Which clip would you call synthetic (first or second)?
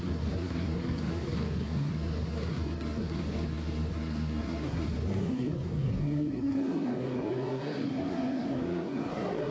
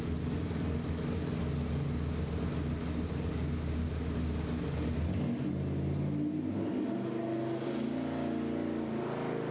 first